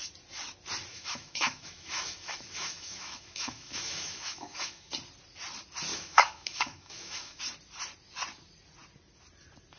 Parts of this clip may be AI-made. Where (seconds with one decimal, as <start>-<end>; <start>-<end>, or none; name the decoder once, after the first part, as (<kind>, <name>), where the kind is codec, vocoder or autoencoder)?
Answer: 0.9-4.9 (autoencoder, DAC-VAE); 5.9-7.4